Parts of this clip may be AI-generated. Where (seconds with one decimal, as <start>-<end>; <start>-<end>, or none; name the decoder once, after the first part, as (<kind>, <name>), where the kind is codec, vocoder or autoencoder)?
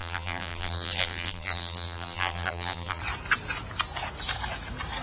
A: 0.0-3.0 (vocoder, BigVGAN v2)